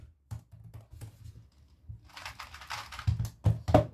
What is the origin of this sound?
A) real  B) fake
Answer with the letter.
A